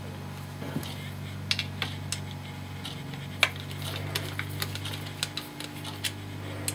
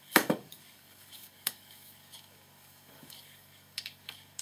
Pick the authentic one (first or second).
first